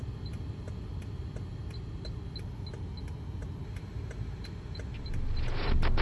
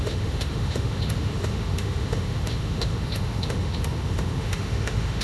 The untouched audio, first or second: first